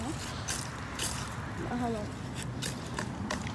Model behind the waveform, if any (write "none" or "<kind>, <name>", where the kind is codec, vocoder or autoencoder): none